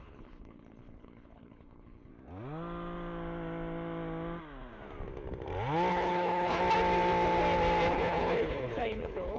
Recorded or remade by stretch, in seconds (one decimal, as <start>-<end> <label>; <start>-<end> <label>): 0.0-2.1 remade; 2.1-5.9 recorded; 5.9-6.6 remade; 6.6-7.9 recorded; 7.9-9.4 remade